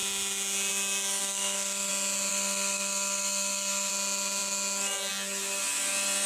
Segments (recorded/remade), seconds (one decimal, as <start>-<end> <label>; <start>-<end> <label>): 0.0-1.2 recorded; 1.2-1.9 remade; 1.9-2.3 recorded; 2.3-3.9 remade; 3.9-6.3 recorded